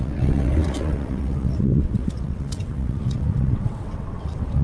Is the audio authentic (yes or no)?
no